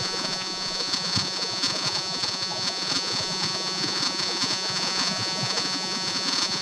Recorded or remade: remade